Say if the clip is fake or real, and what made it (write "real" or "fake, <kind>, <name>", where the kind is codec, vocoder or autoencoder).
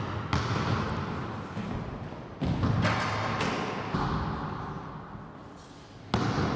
real